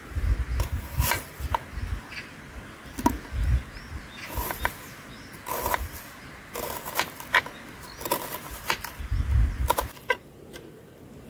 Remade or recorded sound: recorded